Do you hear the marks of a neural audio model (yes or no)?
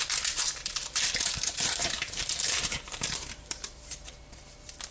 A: yes